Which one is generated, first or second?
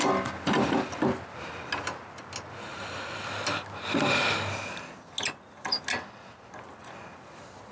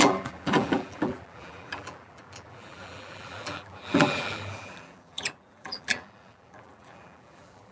second